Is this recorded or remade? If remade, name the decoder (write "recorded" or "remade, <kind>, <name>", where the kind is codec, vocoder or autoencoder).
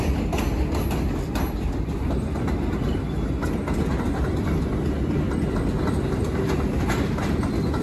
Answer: recorded